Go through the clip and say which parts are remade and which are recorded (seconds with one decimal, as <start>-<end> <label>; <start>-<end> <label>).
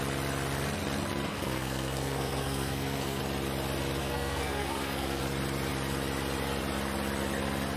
0.0-1.3 recorded; 1.3-3.2 remade; 3.2-4.0 recorded; 4.0-5.2 remade; 5.2-7.8 recorded